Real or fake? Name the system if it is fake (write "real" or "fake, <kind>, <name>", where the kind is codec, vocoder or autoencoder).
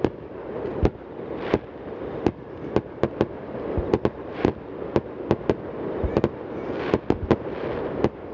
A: real